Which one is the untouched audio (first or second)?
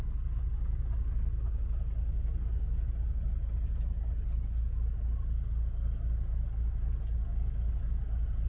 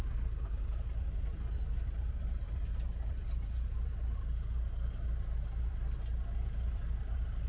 first